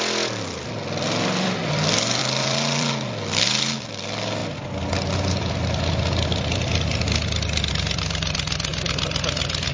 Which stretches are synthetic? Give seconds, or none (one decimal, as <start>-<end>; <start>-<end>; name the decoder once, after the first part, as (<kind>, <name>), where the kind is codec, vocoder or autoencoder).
0.0-8.7 (vocoder, BigVGAN v2)